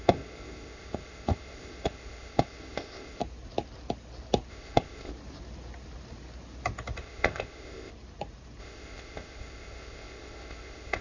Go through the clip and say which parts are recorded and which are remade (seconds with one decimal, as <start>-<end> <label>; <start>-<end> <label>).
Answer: 0.0-3.2 remade; 3.2-4.5 recorded; 4.5-5.1 remade; 5.1-7.0 recorded; 7.0-7.9 remade; 7.9-8.6 recorded; 8.6-11.0 remade